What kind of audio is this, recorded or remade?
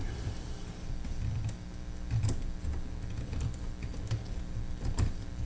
remade